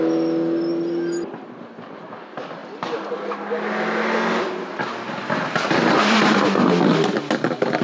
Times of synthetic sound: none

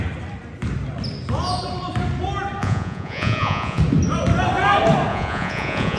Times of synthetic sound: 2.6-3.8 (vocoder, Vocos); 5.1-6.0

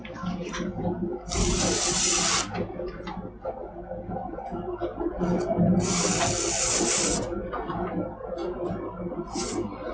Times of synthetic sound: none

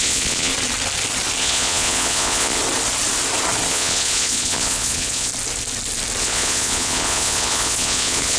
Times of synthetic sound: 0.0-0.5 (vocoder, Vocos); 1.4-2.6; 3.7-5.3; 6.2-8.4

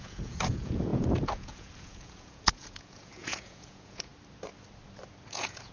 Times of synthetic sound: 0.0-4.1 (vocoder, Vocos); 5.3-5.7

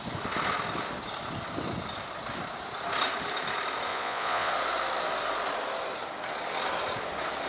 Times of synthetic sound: 3.9-4.5 (vocoder, Vocos)